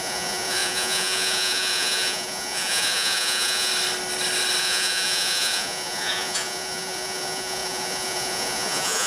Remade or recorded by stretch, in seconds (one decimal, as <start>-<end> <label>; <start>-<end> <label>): 0.0-3.7 remade; 3.7-4.6 recorded; 4.6-9.1 remade